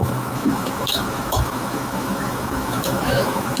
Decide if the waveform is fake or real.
fake